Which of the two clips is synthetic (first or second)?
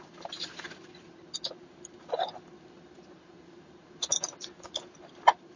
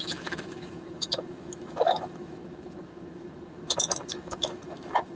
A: second